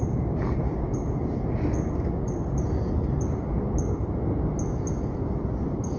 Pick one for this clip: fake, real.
real